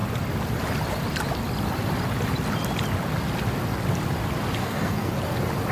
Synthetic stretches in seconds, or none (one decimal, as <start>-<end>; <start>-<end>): 4.6-5.1